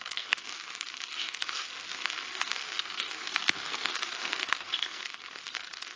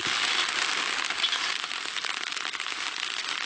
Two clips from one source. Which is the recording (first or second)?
second